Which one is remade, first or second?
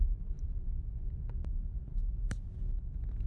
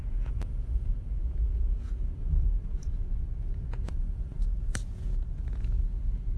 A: second